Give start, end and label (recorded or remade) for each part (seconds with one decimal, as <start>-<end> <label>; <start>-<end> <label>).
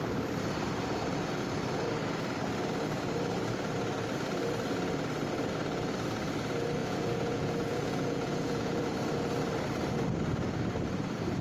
0.0-6.8 recorded; 6.8-8.8 remade; 8.8-11.4 recorded